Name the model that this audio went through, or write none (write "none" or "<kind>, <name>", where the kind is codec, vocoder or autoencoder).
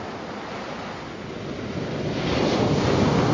none